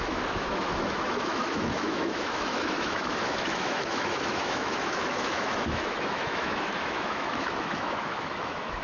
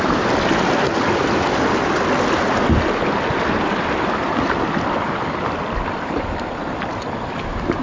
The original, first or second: second